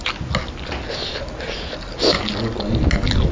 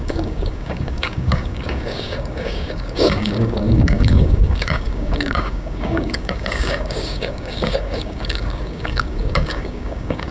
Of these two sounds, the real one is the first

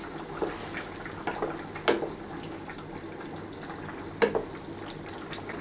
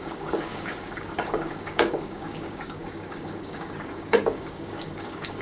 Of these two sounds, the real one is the first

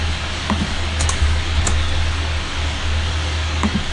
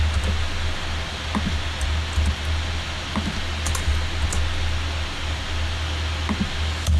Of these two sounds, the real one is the second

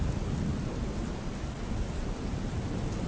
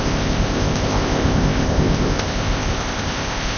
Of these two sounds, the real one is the first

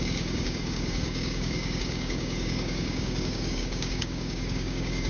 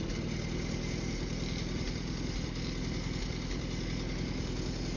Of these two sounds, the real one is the second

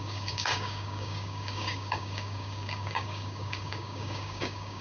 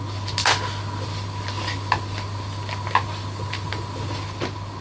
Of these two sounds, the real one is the second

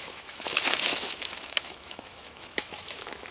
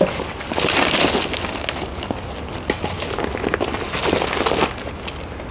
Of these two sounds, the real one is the second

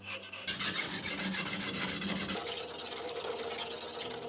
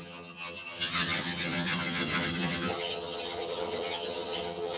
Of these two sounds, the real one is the first